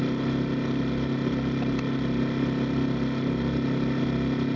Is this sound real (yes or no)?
yes